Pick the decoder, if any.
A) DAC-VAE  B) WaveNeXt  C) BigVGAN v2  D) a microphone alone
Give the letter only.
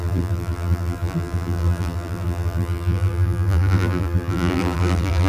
C